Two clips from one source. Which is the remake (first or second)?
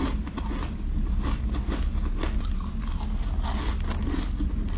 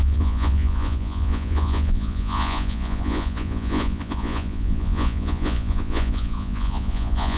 second